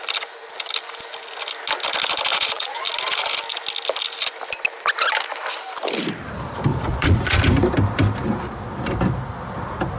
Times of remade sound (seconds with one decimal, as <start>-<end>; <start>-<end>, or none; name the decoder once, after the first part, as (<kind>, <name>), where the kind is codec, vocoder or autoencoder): 2.3-2.8 (vocoder, Vocos); 6.7-7.4